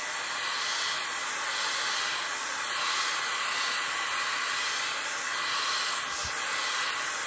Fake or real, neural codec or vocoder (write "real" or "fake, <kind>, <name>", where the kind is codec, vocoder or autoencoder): real